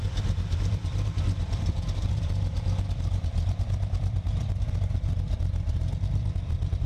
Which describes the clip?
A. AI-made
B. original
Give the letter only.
A